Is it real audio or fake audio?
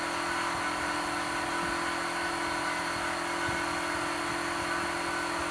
real